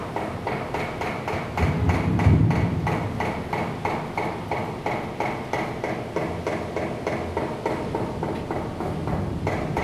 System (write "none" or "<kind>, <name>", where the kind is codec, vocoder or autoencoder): none